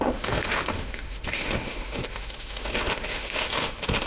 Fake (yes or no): yes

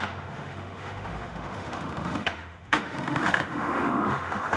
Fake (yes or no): yes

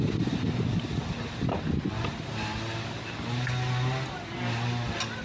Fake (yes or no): no